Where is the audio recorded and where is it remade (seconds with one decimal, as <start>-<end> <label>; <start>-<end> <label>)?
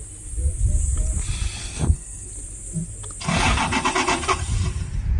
0.0-1.6 recorded; 1.6-2.3 remade; 2.3-5.2 recorded